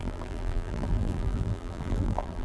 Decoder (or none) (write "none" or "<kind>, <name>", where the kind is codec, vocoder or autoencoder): vocoder, BigVGAN v2